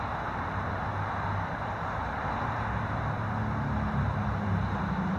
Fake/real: real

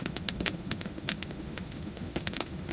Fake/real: fake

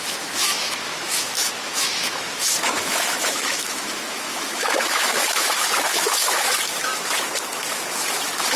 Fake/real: fake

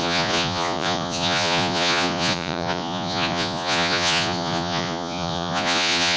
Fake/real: fake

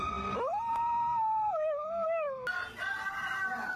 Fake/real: real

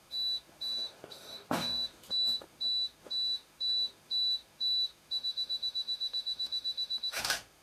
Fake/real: fake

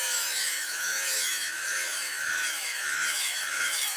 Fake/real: fake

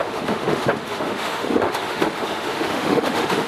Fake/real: fake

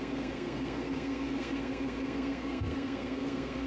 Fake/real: fake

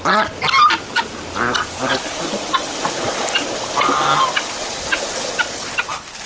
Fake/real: real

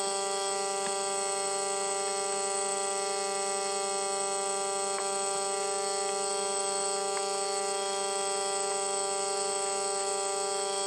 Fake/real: real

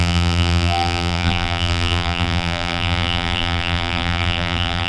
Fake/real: fake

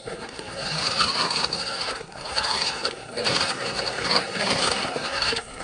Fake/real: fake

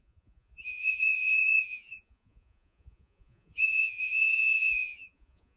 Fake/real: fake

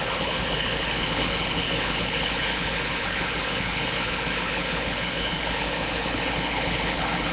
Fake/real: fake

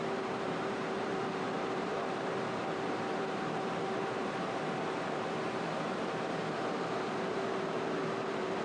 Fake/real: fake